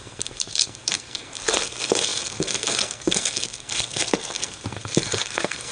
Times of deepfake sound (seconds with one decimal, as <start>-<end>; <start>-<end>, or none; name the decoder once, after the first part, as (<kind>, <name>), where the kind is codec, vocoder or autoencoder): 0.0-5.7 (codec, SNAC)